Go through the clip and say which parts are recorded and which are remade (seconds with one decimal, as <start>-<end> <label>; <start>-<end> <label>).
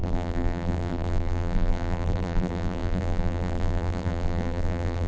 0.0-5.1 remade